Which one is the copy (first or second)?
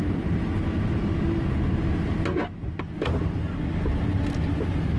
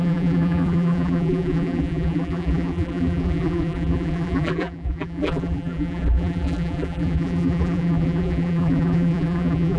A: second